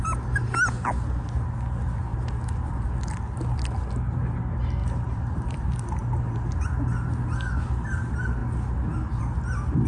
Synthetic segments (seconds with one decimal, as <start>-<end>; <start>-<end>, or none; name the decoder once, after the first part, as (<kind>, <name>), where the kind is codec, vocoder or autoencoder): 4.8-6.5 (vocoder, BigVGAN v2)

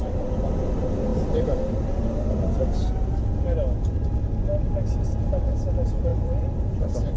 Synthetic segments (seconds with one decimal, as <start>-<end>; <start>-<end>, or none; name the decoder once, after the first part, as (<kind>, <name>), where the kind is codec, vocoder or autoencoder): 6.1-7.2 (vocoder, BigVGAN v2)

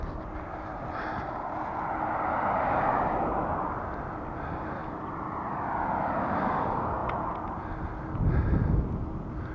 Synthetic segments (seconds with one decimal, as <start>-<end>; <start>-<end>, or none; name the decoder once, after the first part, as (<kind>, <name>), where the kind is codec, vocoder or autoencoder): none

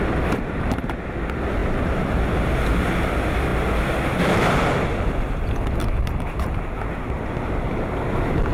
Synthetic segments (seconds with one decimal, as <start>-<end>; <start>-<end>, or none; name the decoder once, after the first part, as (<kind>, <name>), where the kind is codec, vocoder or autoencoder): 1.6-2.1 (vocoder, BigVGAN v2); 5.8-8.0

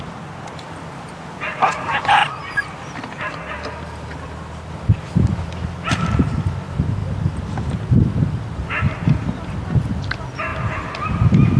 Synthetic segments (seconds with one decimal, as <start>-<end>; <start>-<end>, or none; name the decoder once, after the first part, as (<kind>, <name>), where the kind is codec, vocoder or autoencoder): none